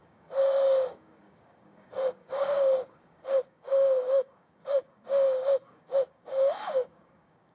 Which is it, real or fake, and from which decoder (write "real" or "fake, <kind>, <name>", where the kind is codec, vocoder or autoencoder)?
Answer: fake, codec, DAC